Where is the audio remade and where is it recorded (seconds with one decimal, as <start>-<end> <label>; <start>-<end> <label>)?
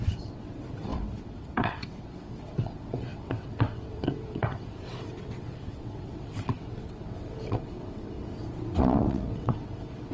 0.0-10.1 remade